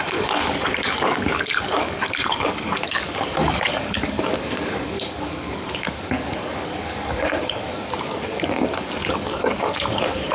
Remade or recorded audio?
remade